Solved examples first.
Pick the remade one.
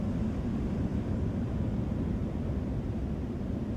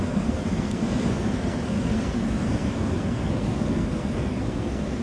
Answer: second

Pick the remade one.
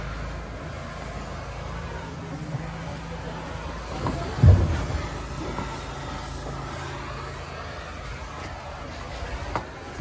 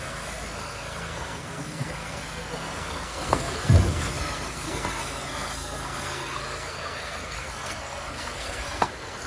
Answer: second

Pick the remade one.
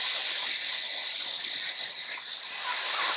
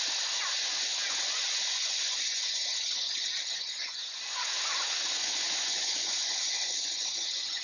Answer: second